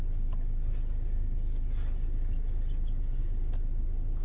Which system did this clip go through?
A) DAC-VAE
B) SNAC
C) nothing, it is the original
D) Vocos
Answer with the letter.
C